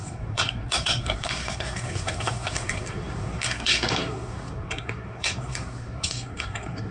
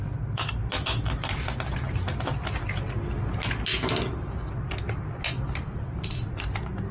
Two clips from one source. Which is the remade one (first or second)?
first